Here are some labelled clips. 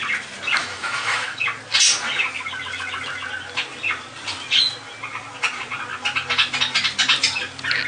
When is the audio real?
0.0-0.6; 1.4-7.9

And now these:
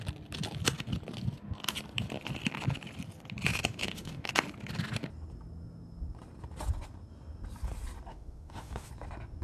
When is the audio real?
0.0-3.5; 4.3-8.1; 8.9-9.4

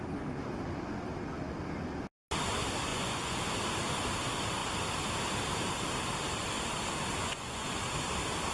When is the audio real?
0.0-2.9; 3.4-7.2; 7.7-8.5

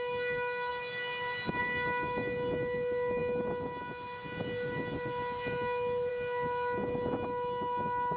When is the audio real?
0.0-8.2

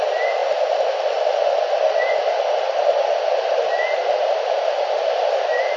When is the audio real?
0.0-5.8

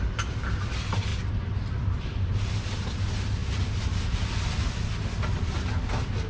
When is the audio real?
0.0-6.3

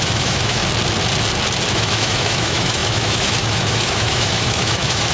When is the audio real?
0.6-1.7

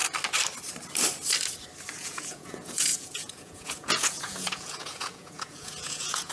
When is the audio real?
0.0-1.9